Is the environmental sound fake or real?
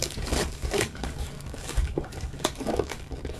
fake